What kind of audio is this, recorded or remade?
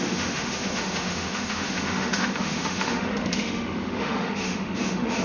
remade